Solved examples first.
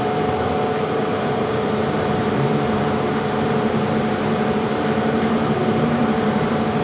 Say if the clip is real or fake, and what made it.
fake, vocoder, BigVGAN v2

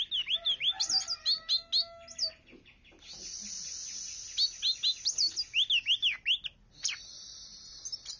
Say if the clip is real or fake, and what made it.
real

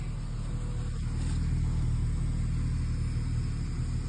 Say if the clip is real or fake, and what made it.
real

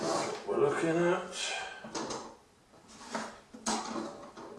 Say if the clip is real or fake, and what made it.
real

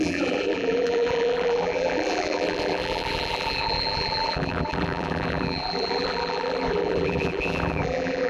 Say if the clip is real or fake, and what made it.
fake, vocoder, BigVGAN v2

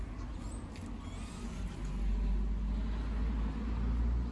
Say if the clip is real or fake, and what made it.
real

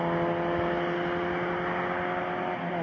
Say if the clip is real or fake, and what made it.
real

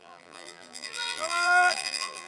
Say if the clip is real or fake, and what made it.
fake, vocoder, BigVGAN v2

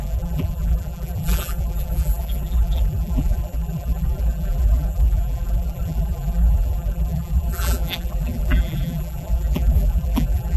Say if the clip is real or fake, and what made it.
fake, vocoder, BigVGAN v2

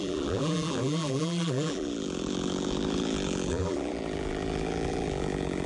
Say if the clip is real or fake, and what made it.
fake, vocoder, BigVGAN v2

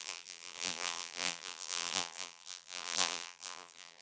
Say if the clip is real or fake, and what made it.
fake, vocoder, BigVGAN v2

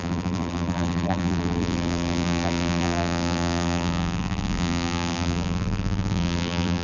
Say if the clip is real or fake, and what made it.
fake, vocoder, BigVGAN v2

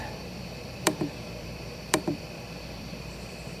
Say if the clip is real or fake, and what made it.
fake, vocoder, BigVGAN v2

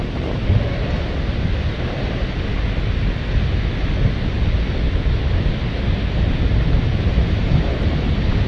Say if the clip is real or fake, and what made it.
real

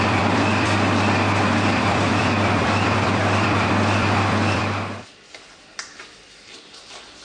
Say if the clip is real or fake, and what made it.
fake, vocoder, BigVGAN v2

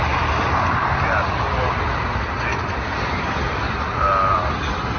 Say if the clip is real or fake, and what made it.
real